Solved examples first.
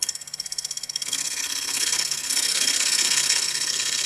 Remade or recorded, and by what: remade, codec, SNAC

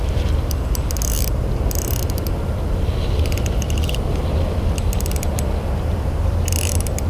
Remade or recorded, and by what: recorded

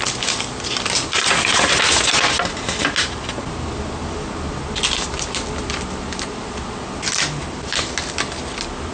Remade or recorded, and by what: recorded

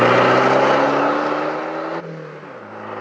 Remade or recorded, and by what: recorded